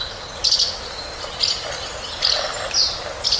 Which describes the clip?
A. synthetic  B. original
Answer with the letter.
B